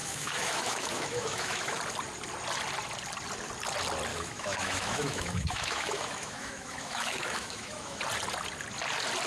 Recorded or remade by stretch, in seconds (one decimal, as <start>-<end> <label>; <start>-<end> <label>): 0.0-1.8 remade; 1.8-4.1 recorded; 4.1-8.0 remade; 8.0-9.3 recorded